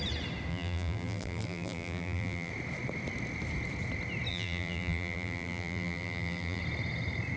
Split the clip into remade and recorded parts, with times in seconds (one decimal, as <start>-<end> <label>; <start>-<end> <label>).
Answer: 0.0-0.5 recorded; 0.5-2.5 remade; 2.5-4.3 recorded; 4.3-6.6 remade; 6.6-7.4 recorded